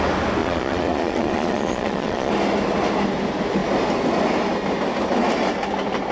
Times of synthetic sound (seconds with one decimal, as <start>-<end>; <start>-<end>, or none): 0.4-2.3